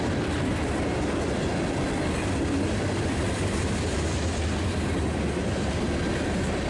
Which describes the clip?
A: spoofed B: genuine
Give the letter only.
B